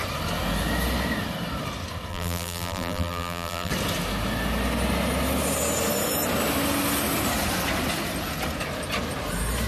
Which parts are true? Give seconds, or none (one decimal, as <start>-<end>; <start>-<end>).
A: 0.0-2.1; 3.7-9.7